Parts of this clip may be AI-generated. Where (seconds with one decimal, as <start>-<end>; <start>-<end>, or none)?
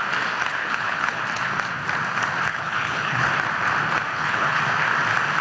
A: 0.6-1.2; 2.5-3.3; 4.1-4.6